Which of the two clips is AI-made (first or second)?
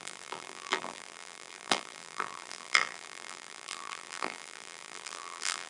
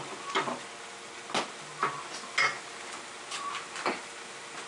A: first